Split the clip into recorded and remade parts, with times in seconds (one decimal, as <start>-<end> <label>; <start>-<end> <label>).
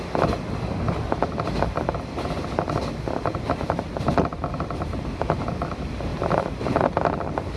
0.0-4.3 recorded; 4.3-5.0 remade; 5.0-6.1 recorded; 6.1-6.7 remade; 6.7-7.6 recorded